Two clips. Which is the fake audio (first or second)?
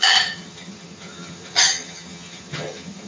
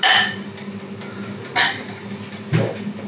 first